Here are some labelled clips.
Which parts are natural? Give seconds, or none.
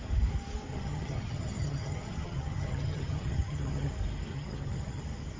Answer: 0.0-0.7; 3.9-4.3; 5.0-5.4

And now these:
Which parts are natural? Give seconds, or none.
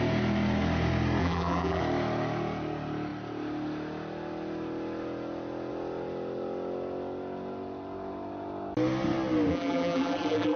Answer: 0.0-1.2; 1.8-9.5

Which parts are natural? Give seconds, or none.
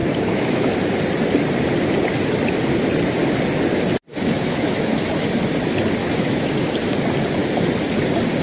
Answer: 0.7-4.1; 5.3-6.0; 6.5-8.4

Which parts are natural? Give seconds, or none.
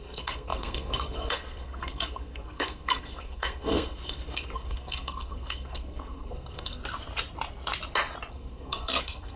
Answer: 6.8-8.3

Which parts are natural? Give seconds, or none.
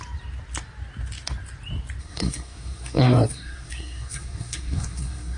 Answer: 0.0-2.0